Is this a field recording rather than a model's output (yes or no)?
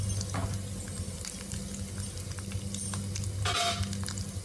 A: yes